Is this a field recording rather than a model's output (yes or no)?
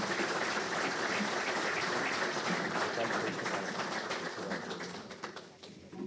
yes